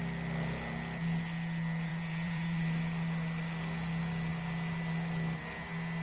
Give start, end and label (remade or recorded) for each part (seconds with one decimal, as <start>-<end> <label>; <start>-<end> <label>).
0.0-1.9 recorded; 1.9-2.6 remade; 2.6-6.0 recorded